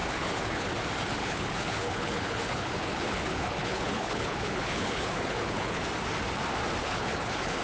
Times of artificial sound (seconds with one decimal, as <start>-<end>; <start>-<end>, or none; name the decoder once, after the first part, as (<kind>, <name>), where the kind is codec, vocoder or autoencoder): 0.0-0.7 (codec, HILCodec); 1.2-5.8; 6.8-7.6